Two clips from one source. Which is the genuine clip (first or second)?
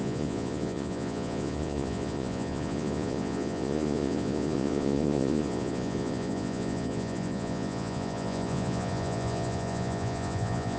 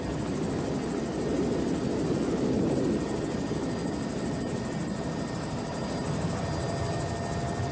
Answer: second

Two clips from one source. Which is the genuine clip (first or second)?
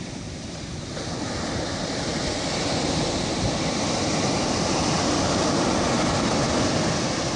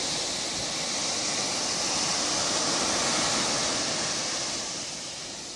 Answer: second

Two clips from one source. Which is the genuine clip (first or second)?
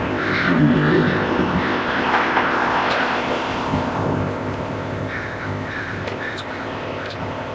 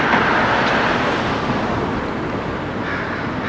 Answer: second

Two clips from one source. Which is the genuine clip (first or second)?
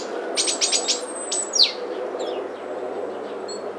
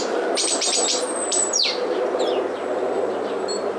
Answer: first